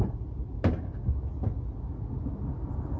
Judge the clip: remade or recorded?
recorded